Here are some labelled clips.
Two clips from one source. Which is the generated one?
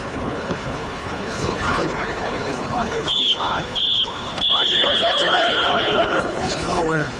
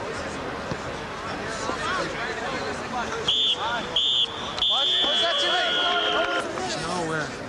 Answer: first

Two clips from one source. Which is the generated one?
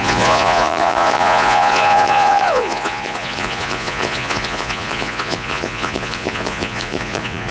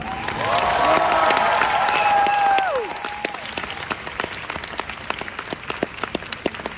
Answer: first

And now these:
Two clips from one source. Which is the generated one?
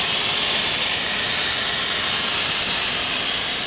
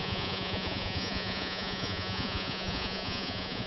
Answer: second